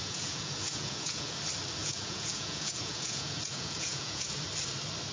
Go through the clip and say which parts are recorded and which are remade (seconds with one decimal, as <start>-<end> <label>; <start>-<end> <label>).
0.0-1.4 remade; 1.4-1.8 recorded; 1.8-4.4 remade; 4.4-5.1 recorded